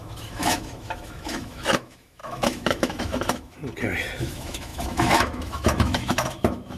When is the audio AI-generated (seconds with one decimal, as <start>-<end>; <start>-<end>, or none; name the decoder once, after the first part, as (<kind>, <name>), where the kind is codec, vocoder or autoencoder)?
0.0-3.6 (autoencoder, DAC-VAE); 4.2-6.8